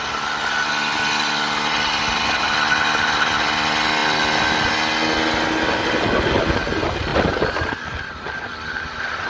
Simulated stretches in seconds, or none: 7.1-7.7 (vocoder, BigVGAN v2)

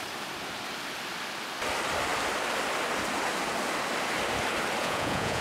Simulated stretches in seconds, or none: 4.8-5.4 (vocoder, Vocos)

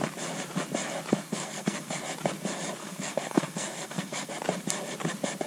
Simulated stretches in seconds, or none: 1.1-2.0 (codec, SNAC); 2.8-4.3

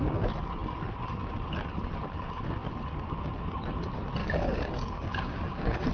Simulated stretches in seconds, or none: 4.2-5.9 (codec, DAC)